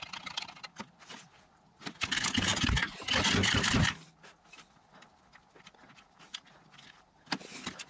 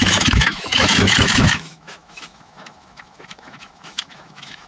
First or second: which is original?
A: first